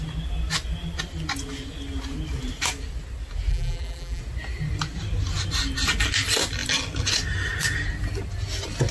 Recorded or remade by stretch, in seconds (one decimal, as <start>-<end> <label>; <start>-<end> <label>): 0.0-3.5 recorded; 3.5-4.2 remade; 4.2-8.9 recorded